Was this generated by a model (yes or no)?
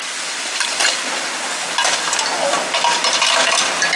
yes